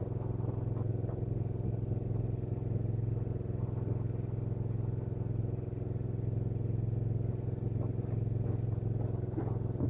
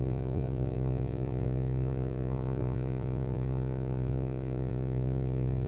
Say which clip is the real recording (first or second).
first